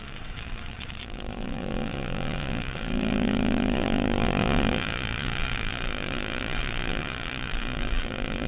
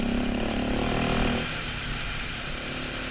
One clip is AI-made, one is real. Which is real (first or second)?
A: second